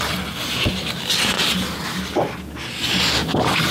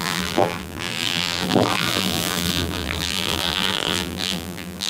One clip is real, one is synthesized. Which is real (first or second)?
first